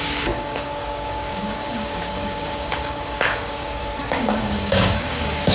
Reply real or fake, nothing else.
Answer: fake